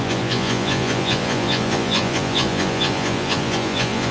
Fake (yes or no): yes